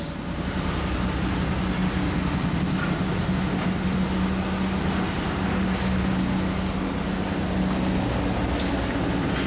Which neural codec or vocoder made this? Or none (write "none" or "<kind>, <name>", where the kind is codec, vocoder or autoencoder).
none